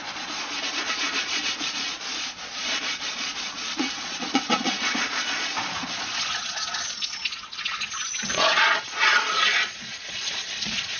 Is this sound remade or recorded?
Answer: remade